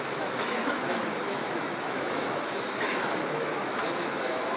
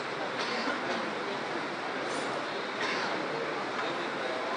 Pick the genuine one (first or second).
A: second